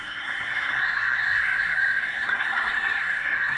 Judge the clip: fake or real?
fake